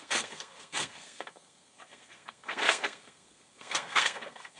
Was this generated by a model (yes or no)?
yes